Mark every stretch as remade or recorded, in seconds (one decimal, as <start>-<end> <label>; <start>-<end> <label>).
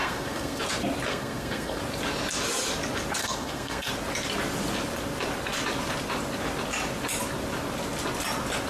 0.0-0.6 remade; 0.6-1.1 recorded; 1.1-1.8 remade; 1.8-3.2 recorded; 3.2-3.9 remade; 3.9-8.7 recorded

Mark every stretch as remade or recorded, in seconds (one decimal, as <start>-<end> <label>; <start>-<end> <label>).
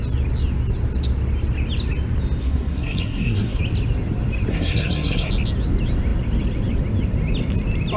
0.0-2.4 recorded; 2.4-3.6 remade; 3.6-4.5 recorded; 4.5-5.3 remade; 5.3-8.0 recorded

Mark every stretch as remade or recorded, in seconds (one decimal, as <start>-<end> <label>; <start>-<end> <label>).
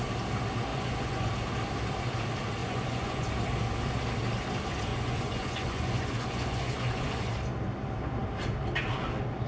0.0-0.7 recorded; 0.7-1.3 remade; 1.3-2.6 recorded; 2.6-3.3 remade; 3.3-4.9 recorded; 4.9-7.3 remade; 7.3-9.5 recorded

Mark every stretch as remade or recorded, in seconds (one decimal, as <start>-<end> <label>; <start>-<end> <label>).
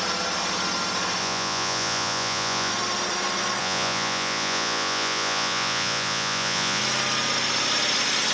0.0-1.2 recorded; 1.2-2.7 remade; 2.7-3.6 recorded; 3.6-6.8 remade; 6.8-8.3 recorded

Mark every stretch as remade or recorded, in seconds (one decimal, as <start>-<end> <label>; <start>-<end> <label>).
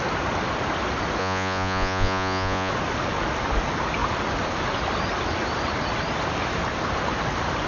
0.0-1.2 recorded; 1.2-2.7 remade; 2.7-7.7 recorded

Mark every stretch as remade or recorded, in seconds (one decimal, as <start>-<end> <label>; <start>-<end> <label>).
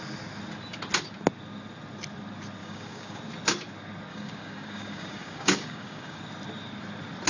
0.0-2.6 recorded; 2.6-3.2 remade; 3.2-4.1 recorded; 4.1-6.2 remade; 6.2-7.3 recorded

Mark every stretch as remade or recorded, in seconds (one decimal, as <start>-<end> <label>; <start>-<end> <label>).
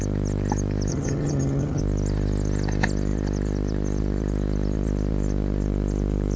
0.0-0.9 recorded; 0.9-1.8 remade; 1.8-6.4 recorded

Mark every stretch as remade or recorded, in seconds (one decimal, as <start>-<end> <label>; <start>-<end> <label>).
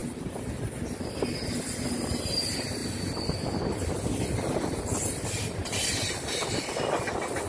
0.0-2.8 recorded; 2.8-6.7 remade; 6.7-7.5 recorded